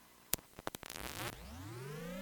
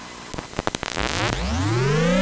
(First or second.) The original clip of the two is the second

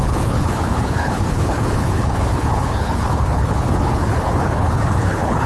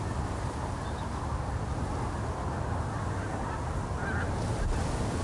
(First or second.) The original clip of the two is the second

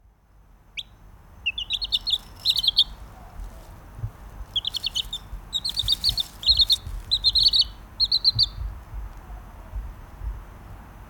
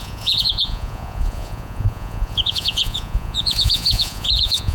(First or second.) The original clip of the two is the first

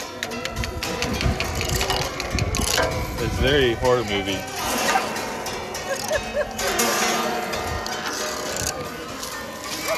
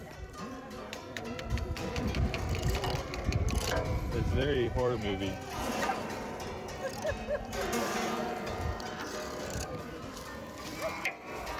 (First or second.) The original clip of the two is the first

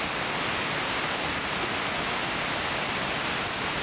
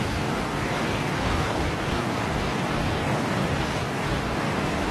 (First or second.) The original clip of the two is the first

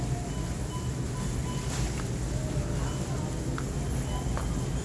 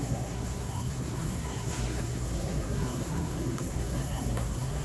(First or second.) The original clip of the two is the first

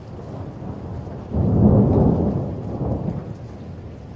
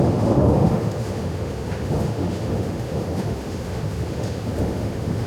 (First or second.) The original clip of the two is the first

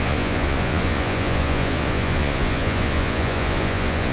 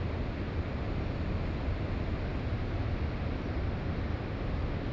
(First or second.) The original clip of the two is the second